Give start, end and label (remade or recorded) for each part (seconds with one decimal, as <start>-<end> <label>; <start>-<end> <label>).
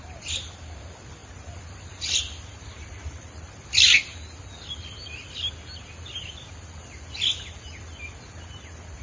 0.0-9.0 recorded